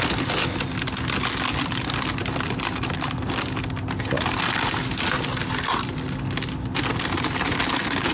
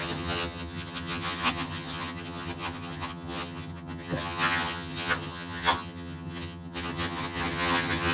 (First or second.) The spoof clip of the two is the second